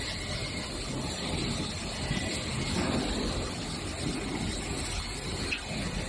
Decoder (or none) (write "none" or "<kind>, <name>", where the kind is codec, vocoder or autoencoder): none